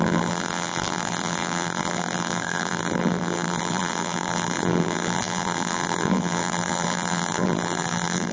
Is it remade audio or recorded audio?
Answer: remade